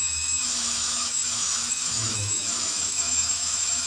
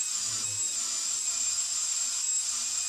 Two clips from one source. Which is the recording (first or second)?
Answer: second